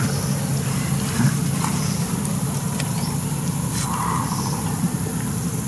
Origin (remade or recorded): recorded